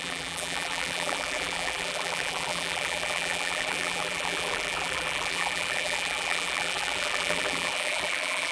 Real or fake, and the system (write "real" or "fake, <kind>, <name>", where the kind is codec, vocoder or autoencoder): fake, vocoder, BigVGAN v2